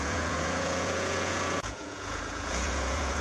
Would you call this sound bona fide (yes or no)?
no